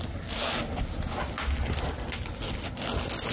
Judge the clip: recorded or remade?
recorded